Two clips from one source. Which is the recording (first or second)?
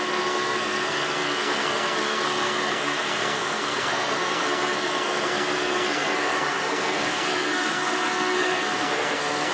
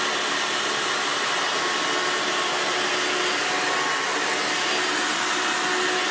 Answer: second